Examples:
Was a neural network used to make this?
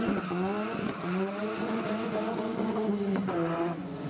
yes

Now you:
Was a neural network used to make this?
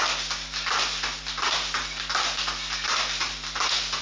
no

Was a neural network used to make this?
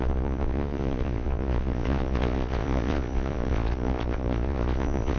yes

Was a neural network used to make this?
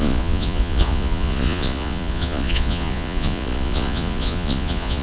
yes